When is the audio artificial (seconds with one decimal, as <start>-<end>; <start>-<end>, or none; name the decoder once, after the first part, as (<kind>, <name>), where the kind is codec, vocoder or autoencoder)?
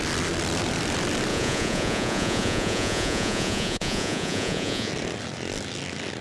1.3-4.9 (vocoder, Vocos)